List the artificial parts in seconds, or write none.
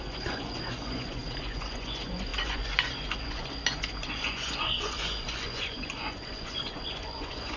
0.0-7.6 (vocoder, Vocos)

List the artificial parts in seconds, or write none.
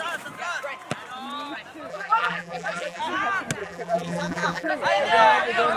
1.9-3.0 (vocoder, BigVGAN v2); 3.6-4.7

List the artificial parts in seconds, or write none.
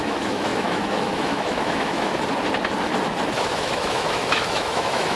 0.0-2.1 (autoencoder, DAC-VAE); 3.4-5.2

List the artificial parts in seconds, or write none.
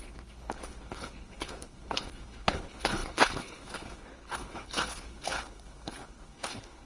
0.0-6.9 (codec, HILCodec)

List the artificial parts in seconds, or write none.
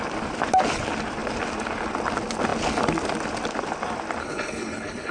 4.2-5.1 (codec, HILCodec)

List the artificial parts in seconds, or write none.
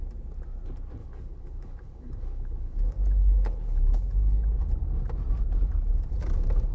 1.0-4.5 (codec, HILCodec)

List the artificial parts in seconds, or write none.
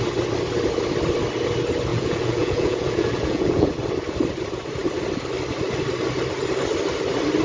1.9-3.7 (vocoder, Vocos)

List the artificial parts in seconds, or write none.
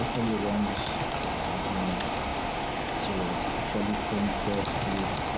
none